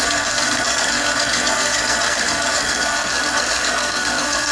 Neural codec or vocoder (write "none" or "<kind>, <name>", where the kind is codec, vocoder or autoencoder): codec, SNAC